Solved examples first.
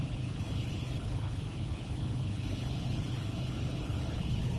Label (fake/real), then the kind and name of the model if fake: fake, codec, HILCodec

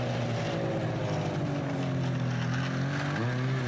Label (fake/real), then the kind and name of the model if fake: real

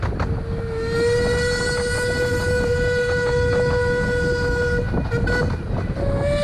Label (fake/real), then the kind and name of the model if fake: real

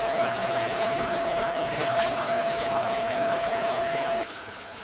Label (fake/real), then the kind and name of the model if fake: fake, codec, HILCodec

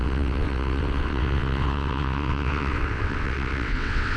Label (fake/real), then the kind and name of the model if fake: fake, vocoder, WaveNeXt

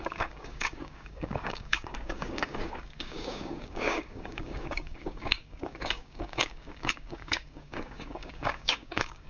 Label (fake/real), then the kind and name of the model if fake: fake, codec, DAC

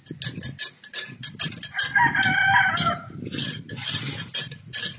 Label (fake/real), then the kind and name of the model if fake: real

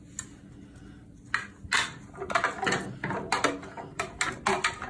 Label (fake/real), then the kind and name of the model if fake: real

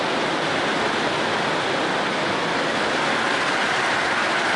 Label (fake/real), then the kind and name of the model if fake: fake, vocoder, BigVGAN v2